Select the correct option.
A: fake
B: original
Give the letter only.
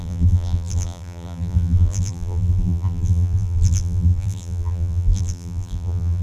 A